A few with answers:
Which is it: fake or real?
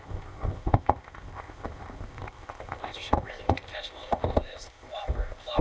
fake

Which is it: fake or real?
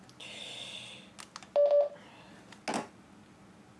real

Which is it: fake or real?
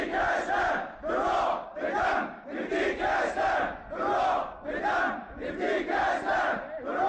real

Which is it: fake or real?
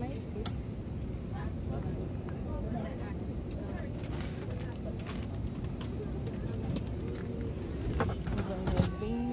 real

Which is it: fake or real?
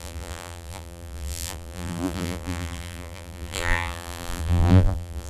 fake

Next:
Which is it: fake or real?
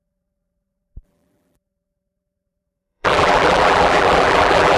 fake